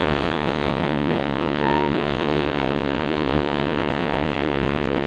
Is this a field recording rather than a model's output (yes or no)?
no